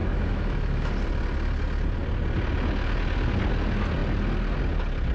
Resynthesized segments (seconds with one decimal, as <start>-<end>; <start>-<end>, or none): 0.0-0.9